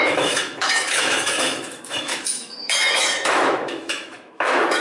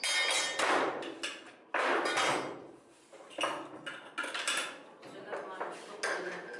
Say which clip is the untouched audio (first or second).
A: second